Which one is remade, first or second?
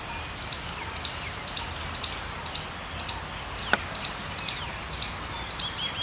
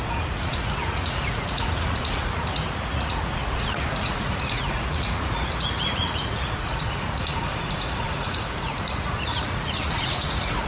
second